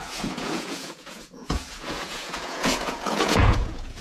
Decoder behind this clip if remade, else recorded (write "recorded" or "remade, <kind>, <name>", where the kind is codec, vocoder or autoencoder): remade, vocoder, Vocos